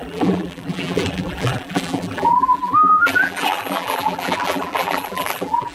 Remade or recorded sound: remade